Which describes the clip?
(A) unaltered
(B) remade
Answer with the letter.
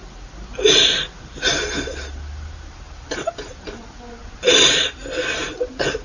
A